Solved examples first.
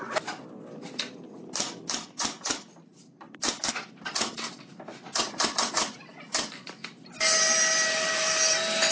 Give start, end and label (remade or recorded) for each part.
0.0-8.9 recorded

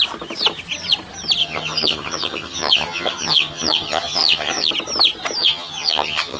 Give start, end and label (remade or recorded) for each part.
0.0-1.4 recorded; 1.4-4.7 remade; 4.7-5.4 recorded; 5.4-6.4 remade

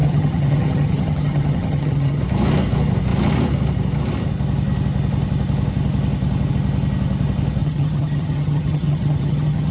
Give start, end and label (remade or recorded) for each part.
0.0-2.2 remade; 2.2-7.6 recorded; 7.6-9.7 remade